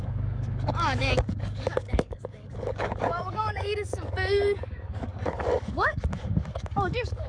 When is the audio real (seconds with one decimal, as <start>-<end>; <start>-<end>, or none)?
none